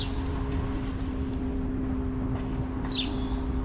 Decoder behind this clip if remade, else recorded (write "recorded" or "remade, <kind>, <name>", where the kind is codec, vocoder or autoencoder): recorded